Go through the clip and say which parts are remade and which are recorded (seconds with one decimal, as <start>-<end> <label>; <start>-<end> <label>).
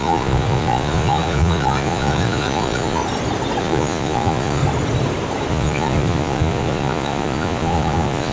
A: 0.0-3.0 remade; 3.0-3.6 recorded; 3.6-4.6 remade; 4.6-5.5 recorded; 5.5-8.3 remade